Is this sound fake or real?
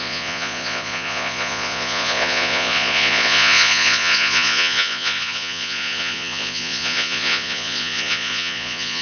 fake